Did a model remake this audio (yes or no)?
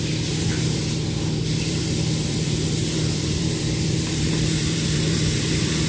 yes